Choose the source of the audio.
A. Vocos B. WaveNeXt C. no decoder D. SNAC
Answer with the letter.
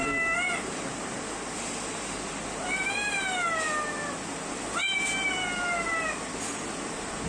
C